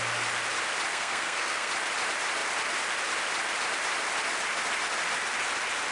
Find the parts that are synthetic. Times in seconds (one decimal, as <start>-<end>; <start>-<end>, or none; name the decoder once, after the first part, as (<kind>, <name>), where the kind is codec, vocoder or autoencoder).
0.9-1.7 (codec, SNAC)